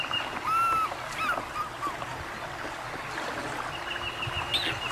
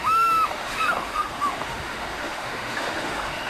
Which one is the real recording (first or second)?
first